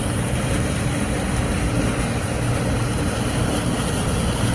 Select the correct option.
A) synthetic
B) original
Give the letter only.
B